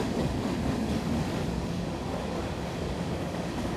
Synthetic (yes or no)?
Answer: yes